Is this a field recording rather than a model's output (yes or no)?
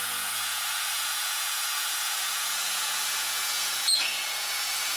no